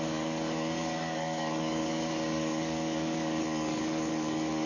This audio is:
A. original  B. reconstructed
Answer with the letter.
B